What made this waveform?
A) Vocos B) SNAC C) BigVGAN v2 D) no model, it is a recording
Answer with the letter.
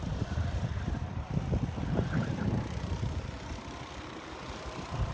C